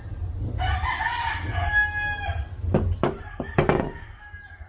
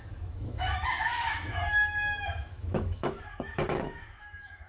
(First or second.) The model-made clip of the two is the second